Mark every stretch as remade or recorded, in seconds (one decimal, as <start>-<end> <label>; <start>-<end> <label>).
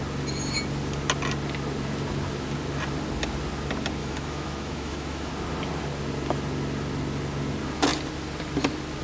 0.0-4.0 recorded; 4.0-5.3 remade; 5.3-9.0 recorded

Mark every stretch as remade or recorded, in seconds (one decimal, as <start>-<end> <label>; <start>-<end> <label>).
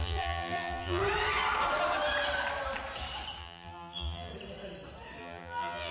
0.0-1.0 remade; 1.0-3.4 recorded; 3.4-4.3 remade; 4.3-5.2 recorded; 5.2-5.9 remade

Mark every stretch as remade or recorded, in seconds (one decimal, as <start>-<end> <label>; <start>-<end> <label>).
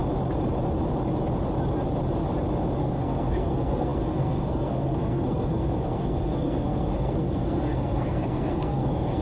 0.0-2.8 recorded; 2.8-9.2 remade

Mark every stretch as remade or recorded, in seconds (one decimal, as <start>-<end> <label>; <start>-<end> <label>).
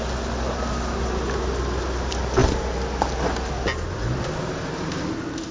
0.0-5.5 recorded